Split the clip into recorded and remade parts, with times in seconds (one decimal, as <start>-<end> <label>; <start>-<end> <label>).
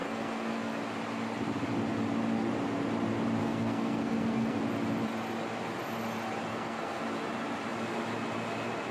0.0-0.8 remade; 0.8-3.4 recorded; 3.4-4.6 remade; 4.6-6.5 recorded; 6.5-7.0 remade; 7.0-8.9 recorded